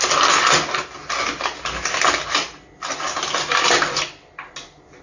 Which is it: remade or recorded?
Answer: recorded